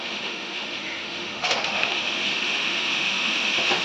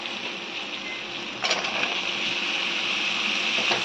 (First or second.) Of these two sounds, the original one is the second